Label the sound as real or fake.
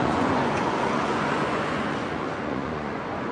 fake